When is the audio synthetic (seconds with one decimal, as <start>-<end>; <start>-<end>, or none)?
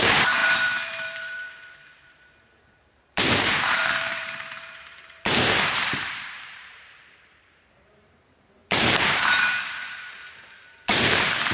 0.0-11.5